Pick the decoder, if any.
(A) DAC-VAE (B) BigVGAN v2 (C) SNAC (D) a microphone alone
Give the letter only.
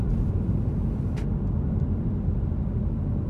D